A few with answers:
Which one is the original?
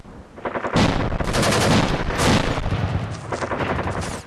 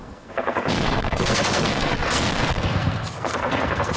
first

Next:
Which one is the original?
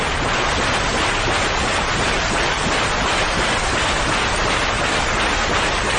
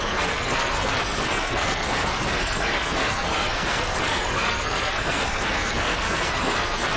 first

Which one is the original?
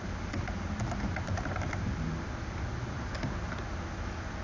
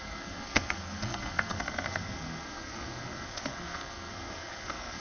first